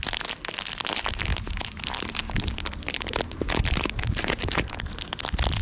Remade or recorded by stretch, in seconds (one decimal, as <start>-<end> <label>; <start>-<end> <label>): 0.0-1.3 recorded; 1.3-4.7 remade; 4.7-5.6 recorded